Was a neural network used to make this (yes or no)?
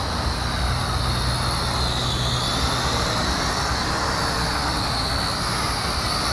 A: no